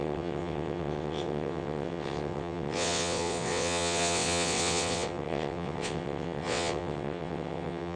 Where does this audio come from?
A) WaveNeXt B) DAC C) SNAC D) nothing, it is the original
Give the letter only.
A